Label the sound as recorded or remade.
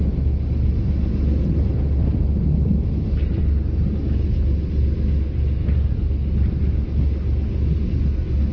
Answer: recorded